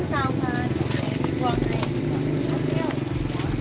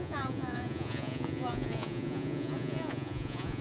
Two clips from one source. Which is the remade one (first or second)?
second